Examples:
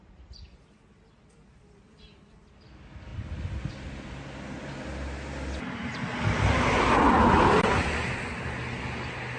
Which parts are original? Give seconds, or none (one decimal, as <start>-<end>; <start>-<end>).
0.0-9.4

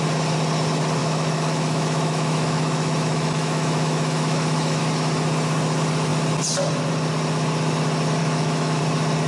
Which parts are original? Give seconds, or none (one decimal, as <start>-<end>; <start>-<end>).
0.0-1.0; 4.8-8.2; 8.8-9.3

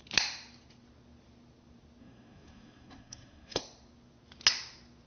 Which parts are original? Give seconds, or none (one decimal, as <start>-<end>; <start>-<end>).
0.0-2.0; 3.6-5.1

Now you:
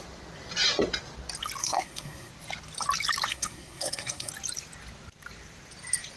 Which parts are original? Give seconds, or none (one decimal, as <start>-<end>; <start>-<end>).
0.0-1.6; 2.3-3.3; 4.3-6.2

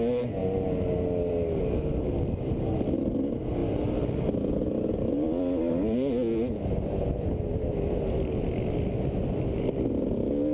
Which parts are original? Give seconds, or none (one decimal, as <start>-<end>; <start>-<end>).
0.0-10.5

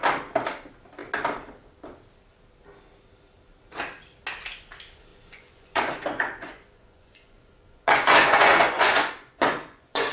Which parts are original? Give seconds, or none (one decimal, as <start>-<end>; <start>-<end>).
0.0-5.1

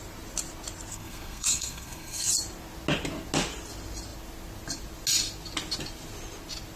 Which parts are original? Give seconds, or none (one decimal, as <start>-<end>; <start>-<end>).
0.0-0.9; 2.3-6.8

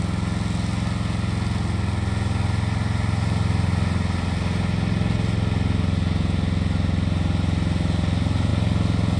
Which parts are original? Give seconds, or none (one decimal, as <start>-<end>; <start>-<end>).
0.0-9.2